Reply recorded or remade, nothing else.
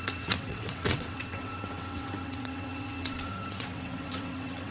remade